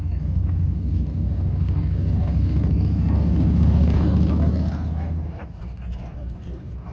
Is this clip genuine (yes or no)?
no